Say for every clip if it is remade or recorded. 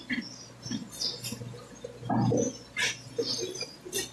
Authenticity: recorded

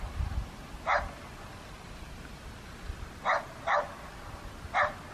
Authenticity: recorded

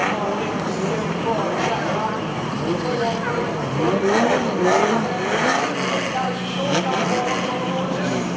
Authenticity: recorded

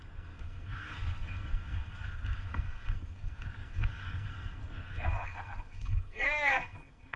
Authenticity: remade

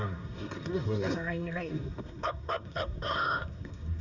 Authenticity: remade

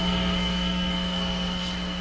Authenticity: remade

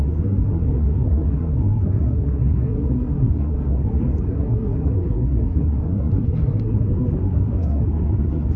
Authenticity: remade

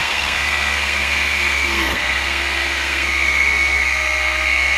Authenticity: remade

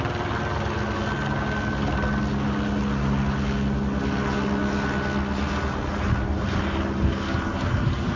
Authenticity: recorded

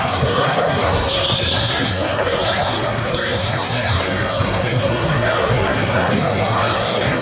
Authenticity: remade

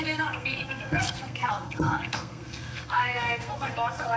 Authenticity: remade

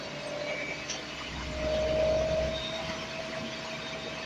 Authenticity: recorded